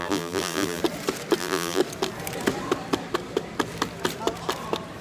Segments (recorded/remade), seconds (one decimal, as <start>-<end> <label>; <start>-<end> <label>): 0.0-0.8 remade; 0.8-1.4 recorded; 1.4-1.8 remade; 1.8-5.0 recorded